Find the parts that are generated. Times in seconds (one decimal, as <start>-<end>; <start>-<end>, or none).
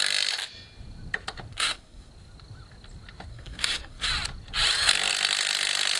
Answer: 1.5-2.1; 3.3-4.1